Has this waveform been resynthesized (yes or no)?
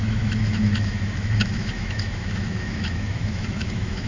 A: yes